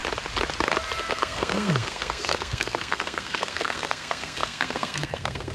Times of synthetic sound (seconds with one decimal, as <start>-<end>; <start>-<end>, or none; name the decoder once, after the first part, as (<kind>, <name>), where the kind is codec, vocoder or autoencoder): 1.1-5.5 (codec, SNAC)